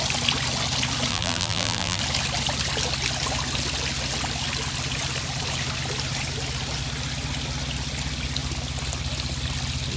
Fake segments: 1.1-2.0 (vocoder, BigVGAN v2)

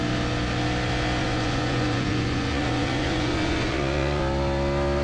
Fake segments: 1.2-4.2 (vocoder, Vocos)

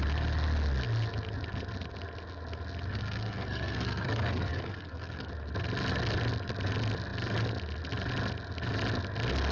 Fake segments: 2.9-5.3 (codec, SNAC)

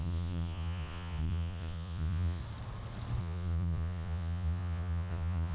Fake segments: 0.0-2.4 (vocoder, Vocos); 3.2-5.5

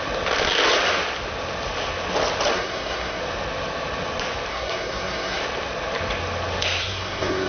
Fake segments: 2.5-3.2 (codec, SNAC); 4.5-5.4; 6.8-7.5

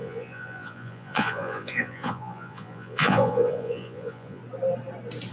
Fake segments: 0.0-4.4 (vocoder, Vocos)

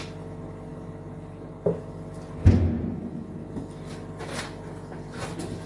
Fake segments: none